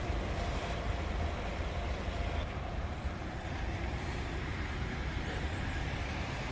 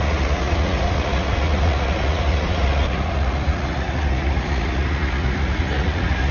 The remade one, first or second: second